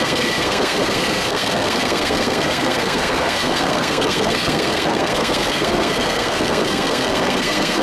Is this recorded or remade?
remade